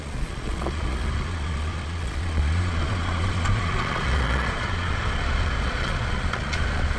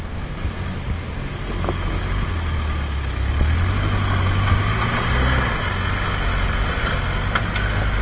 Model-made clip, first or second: first